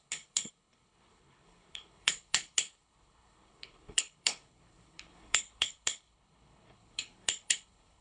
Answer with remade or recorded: remade